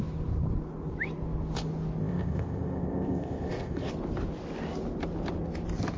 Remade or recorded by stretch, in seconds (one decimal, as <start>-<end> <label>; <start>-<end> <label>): 0.0-2.0 recorded; 2.0-3.9 remade; 3.9-6.0 recorded

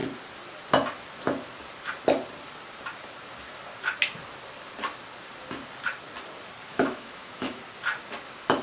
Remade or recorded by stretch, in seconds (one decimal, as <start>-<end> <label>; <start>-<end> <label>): 0.0-6.7 recorded; 6.7-7.6 remade; 7.6-8.6 recorded

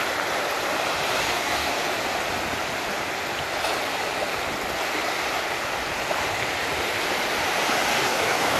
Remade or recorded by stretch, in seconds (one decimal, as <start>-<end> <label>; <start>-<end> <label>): 0.0-1.1 recorded; 1.1-1.7 remade; 1.7-7.9 recorded; 7.9-8.6 remade